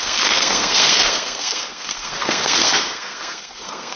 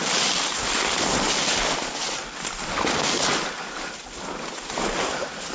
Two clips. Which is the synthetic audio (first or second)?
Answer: first